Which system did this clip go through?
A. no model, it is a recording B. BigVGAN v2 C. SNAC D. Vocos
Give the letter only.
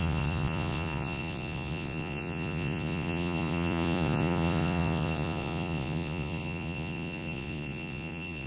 D